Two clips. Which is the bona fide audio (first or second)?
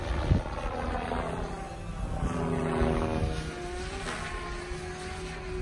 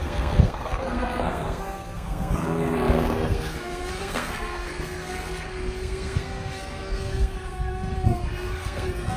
first